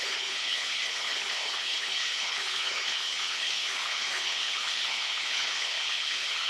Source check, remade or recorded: remade